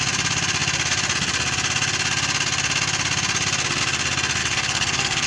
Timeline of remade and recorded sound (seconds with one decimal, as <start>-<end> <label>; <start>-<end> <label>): 0.0-4.4 recorded; 4.4-5.3 remade